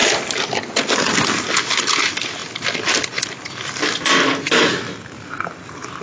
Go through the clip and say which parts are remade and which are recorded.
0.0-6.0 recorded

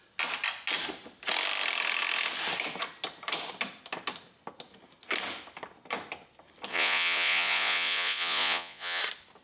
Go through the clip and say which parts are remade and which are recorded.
0.0-6.7 recorded; 6.7-9.0 remade; 9.0-9.4 recorded

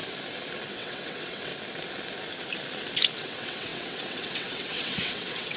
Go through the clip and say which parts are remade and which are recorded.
0.0-0.7 recorded; 0.7-1.5 remade; 1.5-3.2 recorded; 3.2-5.6 remade

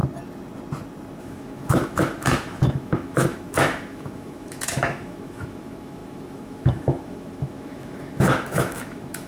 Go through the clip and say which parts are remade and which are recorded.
0.0-1.2 recorded; 1.2-9.3 remade